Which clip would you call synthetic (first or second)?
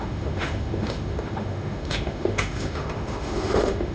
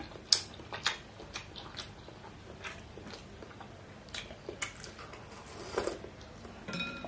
first